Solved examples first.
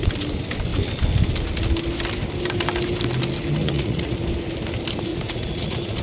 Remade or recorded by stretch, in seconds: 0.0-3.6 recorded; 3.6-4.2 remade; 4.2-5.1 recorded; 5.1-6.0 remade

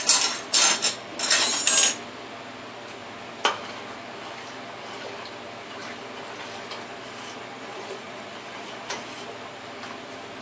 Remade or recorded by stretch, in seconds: 0.0-7.5 recorded; 7.5-8.3 remade; 8.3-10.4 recorded

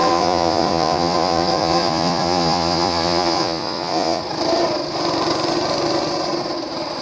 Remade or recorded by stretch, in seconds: 0.0-4.2 remade; 4.2-7.0 recorded

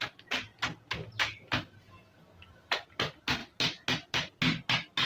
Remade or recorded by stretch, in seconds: 0.0-5.1 recorded

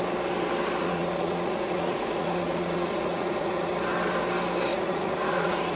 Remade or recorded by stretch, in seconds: 0.0-0.8 recorded; 0.8-3.7 remade; 3.7-4.7 recorded; 4.7-5.8 remade